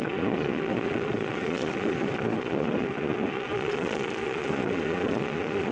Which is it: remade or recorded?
remade